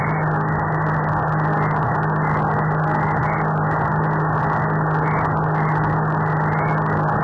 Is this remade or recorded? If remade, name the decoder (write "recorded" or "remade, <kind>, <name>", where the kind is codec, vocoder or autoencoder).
recorded